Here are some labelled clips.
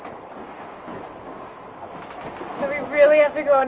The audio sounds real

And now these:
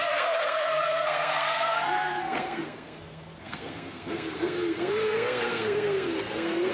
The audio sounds fake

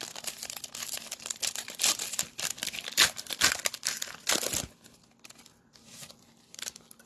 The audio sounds real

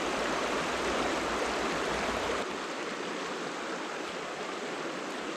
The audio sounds real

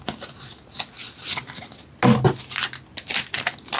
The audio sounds real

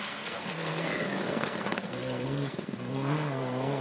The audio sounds fake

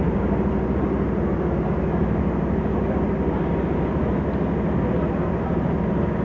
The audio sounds real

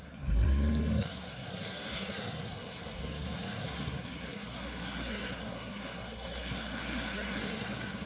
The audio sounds fake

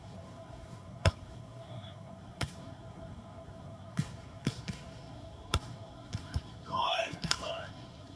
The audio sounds fake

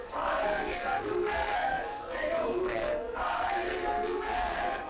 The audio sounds fake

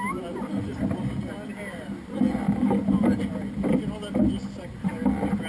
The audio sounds real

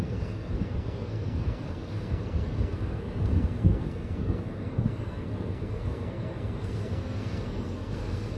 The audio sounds fake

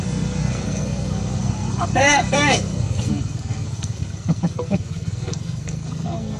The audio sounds fake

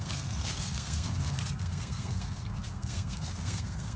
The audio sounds fake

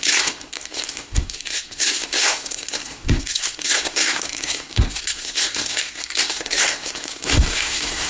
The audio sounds fake